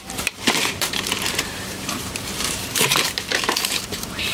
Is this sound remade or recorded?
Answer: remade